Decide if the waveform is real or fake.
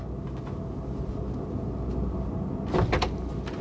real